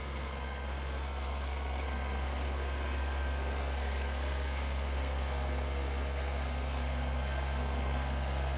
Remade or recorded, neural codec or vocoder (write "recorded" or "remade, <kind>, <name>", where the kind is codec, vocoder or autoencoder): remade, codec, SNAC